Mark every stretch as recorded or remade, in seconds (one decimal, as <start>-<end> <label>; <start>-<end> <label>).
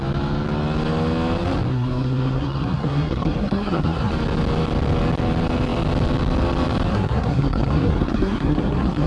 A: 0.0-1.7 recorded; 1.7-4.1 remade; 4.1-6.9 recorded; 6.9-9.1 remade